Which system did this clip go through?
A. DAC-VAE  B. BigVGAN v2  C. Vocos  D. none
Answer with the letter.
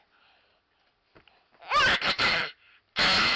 D